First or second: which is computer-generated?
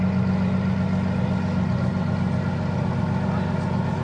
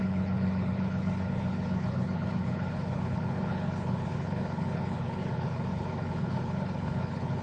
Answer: second